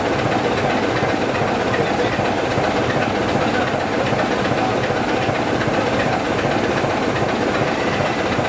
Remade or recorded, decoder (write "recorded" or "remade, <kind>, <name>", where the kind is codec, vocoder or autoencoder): remade, vocoder, BigVGAN v2